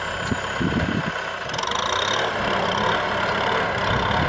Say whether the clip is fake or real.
real